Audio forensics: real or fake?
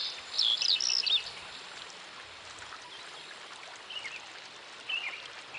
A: real